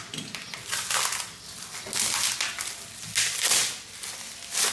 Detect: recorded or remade recorded